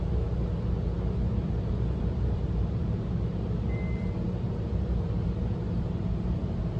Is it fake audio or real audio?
fake